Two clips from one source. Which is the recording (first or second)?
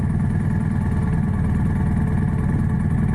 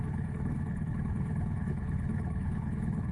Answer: first